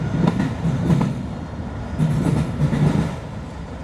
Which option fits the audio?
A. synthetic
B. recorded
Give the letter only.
B